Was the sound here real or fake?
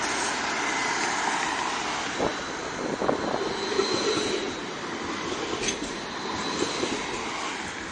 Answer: real